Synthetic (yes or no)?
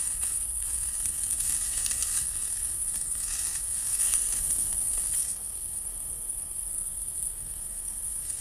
yes